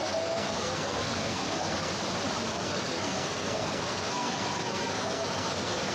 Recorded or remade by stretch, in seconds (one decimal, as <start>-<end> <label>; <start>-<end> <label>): 0.0-1.9 remade; 1.9-2.5 recorded; 2.5-5.9 remade